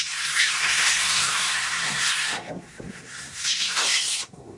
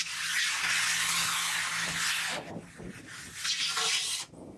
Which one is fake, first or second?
first